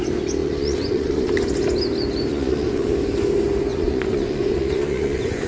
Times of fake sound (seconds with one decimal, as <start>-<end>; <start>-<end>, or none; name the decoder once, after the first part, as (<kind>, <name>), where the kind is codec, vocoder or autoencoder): 0.4-1.3 (vocoder, Vocos); 2.3-2.9; 3.7-5.5